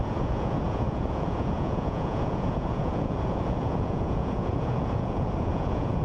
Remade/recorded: remade